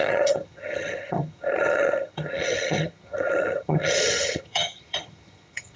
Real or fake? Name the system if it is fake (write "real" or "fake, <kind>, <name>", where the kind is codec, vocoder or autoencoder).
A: fake, vocoder, HiFi-GAN